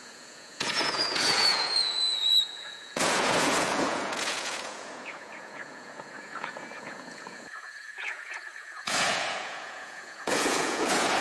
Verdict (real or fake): fake